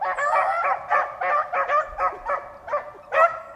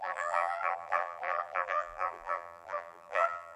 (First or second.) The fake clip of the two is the second